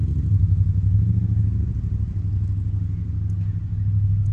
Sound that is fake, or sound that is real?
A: real